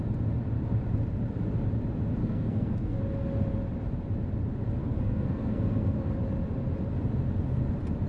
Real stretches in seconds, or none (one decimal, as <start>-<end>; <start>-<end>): 0.0-2.2; 3.0-4.8; 6.0-8.1